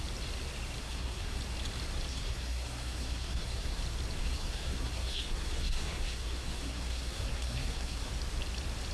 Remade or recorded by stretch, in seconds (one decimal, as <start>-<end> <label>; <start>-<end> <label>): 0.0-0.8 recorded; 0.8-1.4 remade; 1.4-2.1 recorded; 2.1-3.8 remade; 3.8-4.2 recorded; 4.2-8.1 remade; 8.1-8.9 recorded